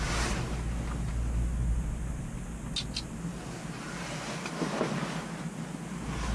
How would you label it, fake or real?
real